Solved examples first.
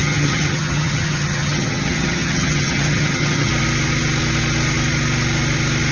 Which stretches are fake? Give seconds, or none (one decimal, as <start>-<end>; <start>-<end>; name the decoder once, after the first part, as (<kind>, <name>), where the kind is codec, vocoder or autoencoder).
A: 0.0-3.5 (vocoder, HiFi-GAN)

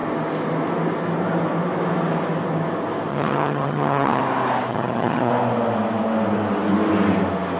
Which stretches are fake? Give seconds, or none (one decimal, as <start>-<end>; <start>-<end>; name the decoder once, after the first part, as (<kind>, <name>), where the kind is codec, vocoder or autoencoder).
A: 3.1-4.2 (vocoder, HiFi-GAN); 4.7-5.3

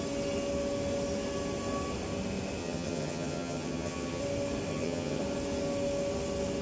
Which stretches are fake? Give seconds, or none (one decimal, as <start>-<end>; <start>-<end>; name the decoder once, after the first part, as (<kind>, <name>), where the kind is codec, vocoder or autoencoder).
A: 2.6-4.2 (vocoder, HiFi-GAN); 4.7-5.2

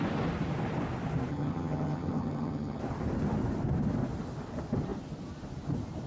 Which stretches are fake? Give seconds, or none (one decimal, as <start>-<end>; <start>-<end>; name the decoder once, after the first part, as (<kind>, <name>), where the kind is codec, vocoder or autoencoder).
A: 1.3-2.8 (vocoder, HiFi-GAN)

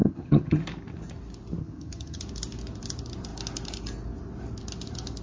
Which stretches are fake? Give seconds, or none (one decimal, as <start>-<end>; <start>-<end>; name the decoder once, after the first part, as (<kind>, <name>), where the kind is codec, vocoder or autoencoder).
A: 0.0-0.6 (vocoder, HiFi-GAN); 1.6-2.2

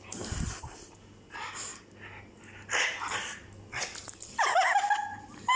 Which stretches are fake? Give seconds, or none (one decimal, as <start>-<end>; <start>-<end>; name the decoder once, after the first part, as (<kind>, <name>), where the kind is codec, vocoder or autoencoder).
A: none

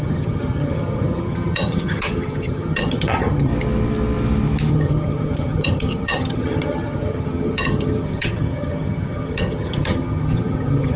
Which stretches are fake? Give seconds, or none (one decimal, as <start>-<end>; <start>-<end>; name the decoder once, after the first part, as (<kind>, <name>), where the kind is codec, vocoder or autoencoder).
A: 0.0-3.5 (vocoder, HiFi-GAN); 4.7-11.0